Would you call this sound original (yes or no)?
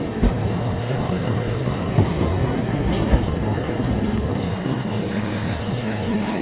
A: no